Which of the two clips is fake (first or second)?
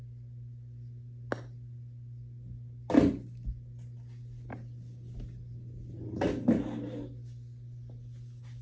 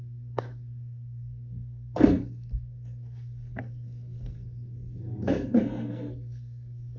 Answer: second